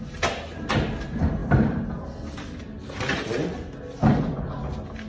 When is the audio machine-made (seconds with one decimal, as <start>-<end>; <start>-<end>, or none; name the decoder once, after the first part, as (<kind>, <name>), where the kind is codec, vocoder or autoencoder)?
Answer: none